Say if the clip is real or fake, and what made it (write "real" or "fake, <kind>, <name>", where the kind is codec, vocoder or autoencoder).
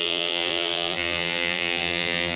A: fake, vocoder, BigVGAN v2